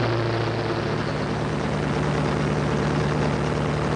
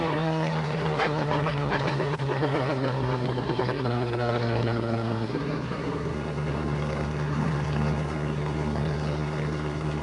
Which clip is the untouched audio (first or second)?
first